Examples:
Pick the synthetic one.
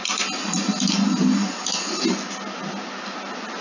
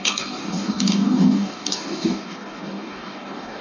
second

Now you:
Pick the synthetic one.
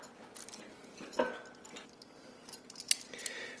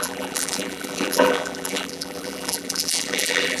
second